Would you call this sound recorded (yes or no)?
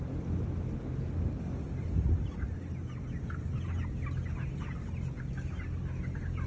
yes